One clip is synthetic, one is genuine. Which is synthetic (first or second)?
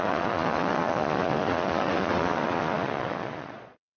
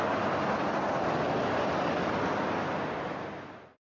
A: first